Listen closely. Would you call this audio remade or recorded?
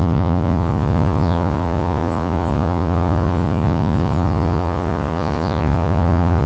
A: remade